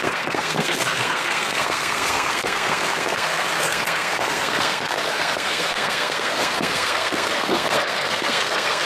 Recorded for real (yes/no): no